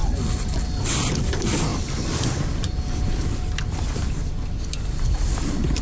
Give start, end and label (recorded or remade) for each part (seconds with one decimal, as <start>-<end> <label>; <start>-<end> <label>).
0.0-5.8 recorded